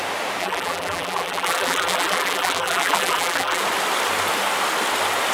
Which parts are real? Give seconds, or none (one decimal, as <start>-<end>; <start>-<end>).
0.0-0.4; 3.6-5.3